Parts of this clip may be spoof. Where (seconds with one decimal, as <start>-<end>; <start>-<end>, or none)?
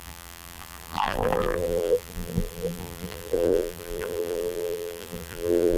0.0-5.8